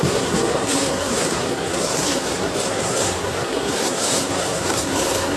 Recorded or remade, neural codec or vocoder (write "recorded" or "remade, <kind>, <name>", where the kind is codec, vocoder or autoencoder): remade, codec, SNAC